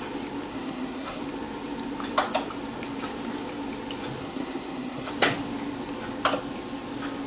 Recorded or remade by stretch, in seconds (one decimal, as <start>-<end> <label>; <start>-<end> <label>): 0.0-0.5 recorded; 0.5-1.2 remade; 1.2-4.2 recorded; 4.2-5.1 remade; 5.1-7.3 recorded